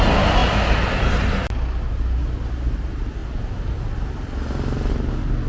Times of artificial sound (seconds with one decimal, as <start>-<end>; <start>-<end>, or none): none